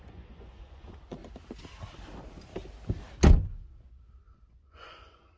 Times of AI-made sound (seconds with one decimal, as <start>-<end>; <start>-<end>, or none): 0.0-1.2; 4.2-5.4